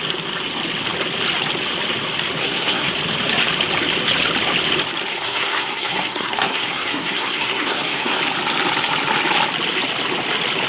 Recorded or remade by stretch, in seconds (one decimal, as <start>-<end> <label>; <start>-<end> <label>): 0.0-2.4 recorded; 2.4-2.9 remade; 2.9-5.1 recorded; 5.1-8.2 remade; 8.2-10.7 recorded